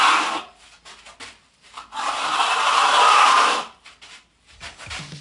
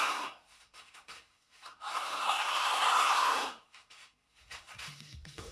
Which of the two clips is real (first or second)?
first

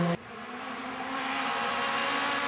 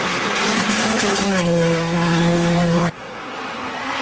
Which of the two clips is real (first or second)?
first